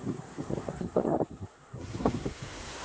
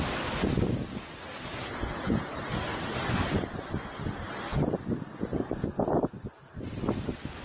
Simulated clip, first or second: first